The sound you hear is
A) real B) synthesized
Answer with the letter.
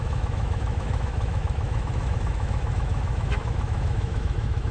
B